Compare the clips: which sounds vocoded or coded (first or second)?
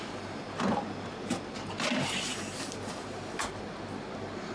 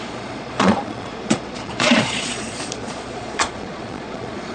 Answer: second